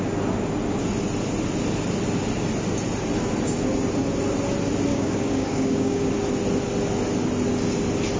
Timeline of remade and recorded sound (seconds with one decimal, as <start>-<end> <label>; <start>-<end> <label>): 0.0-4.9 recorded; 4.9-6.1 remade; 6.1-8.2 recorded